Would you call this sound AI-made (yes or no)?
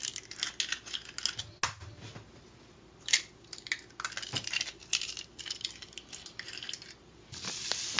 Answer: no